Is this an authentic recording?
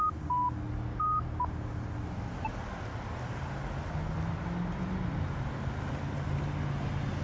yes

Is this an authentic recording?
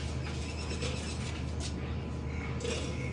yes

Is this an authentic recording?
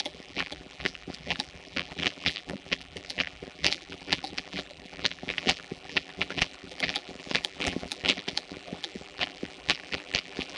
no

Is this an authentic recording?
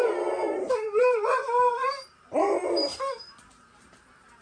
no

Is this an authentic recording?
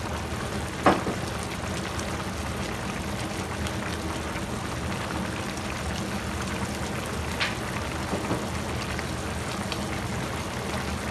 yes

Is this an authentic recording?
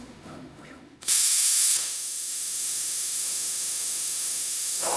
no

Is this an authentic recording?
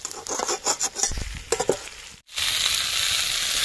yes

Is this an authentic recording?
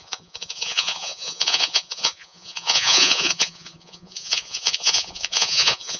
no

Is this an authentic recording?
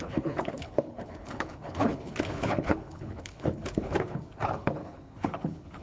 no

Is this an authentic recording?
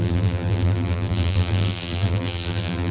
no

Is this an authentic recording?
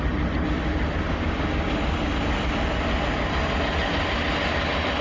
yes